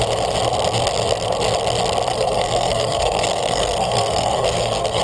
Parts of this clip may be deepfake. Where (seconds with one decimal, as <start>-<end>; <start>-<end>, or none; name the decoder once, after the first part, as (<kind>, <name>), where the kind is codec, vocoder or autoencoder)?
2.1-5.0 (codec, SNAC)